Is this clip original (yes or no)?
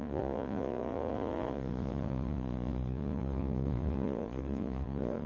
no